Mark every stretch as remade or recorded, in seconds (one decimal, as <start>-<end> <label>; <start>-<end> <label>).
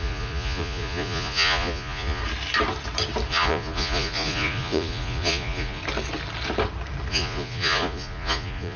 0.0-2.2 remade; 2.2-3.3 recorded; 3.3-5.8 remade; 5.8-7.1 recorded; 7.1-8.8 remade